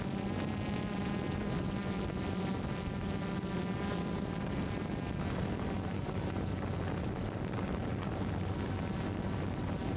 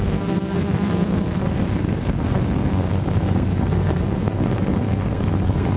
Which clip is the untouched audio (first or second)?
first